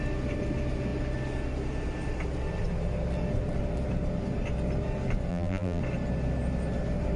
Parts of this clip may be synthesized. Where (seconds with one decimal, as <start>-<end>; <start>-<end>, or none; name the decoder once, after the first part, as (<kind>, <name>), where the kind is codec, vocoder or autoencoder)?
5.3-5.8 (vocoder, BigVGAN v2)